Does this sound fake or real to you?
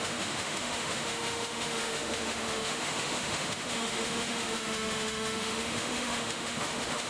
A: fake